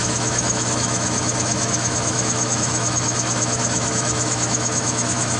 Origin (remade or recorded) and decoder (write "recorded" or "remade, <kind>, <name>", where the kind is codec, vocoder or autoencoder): remade, autoencoder, DAC-VAE